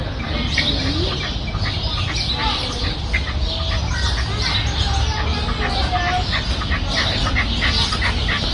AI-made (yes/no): no